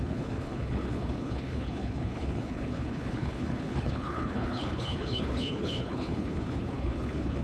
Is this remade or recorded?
remade